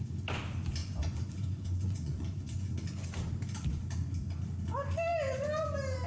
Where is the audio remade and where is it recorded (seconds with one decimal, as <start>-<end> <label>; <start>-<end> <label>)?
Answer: 0.0-0.8 recorded; 0.8-2.7 remade; 2.7-6.1 recorded